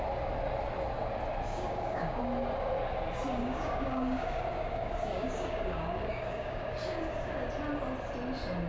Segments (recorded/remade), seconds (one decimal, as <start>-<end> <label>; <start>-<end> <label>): 0.0-1.5 recorded; 1.5-2.2 remade; 2.2-3.4 recorded; 3.4-7.5 remade; 7.5-8.7 recorded